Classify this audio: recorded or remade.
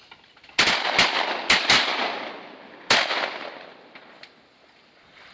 recorded